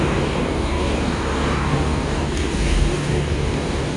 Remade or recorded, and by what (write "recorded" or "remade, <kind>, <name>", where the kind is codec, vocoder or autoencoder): remade, codec, DAC